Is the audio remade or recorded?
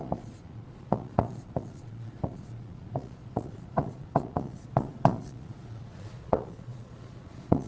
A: remade